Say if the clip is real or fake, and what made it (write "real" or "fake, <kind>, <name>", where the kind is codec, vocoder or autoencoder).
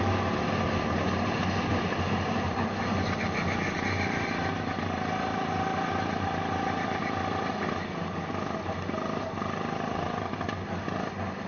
real